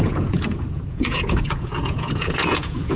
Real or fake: fake